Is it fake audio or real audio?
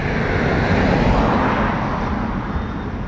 real